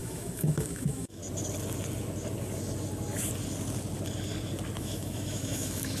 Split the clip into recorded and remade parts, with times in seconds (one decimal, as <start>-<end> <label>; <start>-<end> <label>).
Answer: 0.0-1.2 remade; 1.2-4.8 recorded; 4.8-6.0 remade